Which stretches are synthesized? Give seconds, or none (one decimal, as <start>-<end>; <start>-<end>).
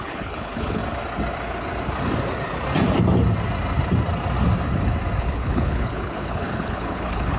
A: 0.0-0.8; 5.2-7.4